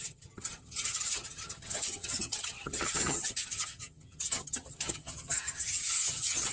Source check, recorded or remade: remade